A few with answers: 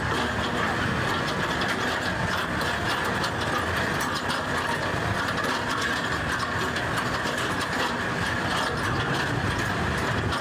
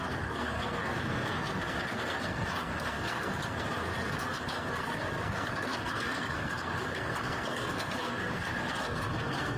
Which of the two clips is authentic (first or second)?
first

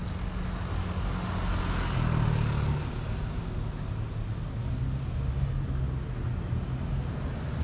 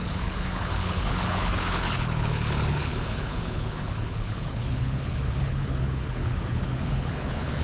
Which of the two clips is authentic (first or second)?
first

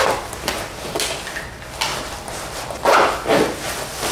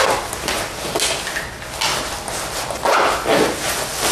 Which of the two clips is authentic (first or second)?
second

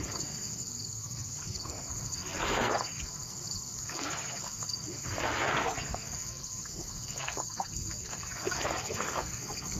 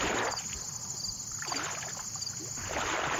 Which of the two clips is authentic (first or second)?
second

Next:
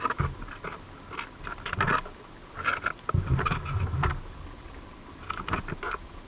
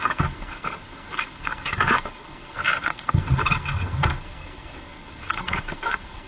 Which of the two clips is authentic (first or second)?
first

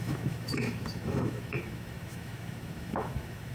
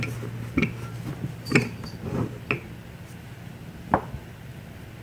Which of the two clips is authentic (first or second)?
second